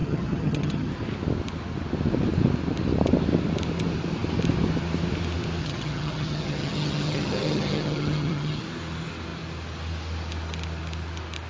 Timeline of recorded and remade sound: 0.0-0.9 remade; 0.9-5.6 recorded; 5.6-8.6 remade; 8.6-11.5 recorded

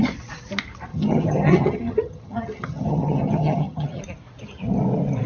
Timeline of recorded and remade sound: 0.0-0.9 recorded; 0.9-4.0 remade; 4.0-5.3 recorded

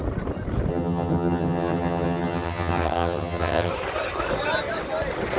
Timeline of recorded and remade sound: 0.0-0.7 recorded; 0.7-3.7 remade; 3.7-5.4 recorded

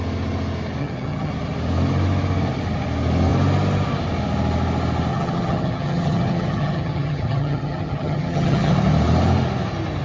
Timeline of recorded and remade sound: 0.0-0.8 recorded; 0.8-1.3 remade; 1.3-5.1 recorded; 5.1-8.7 remade; 8.7-10.0 recorded

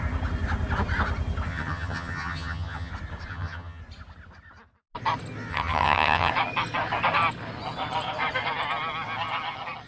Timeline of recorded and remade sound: 0.0-1.5 recorded; 1.5-2.9 remade; 2.9-3.3 recorded; 3.3-3.8 remade; 3.8-5.5 recorded; 5.5-6.3 remade; 6.3-9.9 recorded

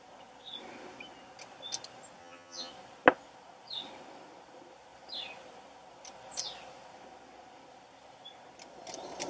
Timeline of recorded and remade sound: 0.0-2.2 recorded; 2.2-2.7 remade; 2.7-9.3 recorded